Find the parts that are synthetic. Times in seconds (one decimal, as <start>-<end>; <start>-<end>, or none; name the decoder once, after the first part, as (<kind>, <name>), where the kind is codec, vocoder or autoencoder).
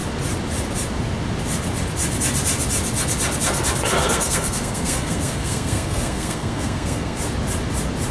4.0-7.2 (codec, SNAC)